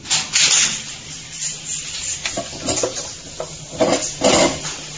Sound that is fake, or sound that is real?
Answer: real